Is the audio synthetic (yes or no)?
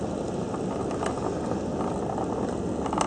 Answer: no